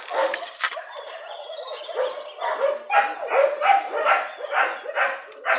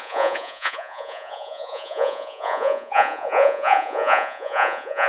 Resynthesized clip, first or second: second